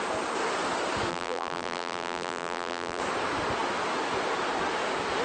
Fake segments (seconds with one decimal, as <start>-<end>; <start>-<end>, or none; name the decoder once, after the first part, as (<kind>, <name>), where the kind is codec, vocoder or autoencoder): 1.1-3.0 (vocoder, BigVGAN v2)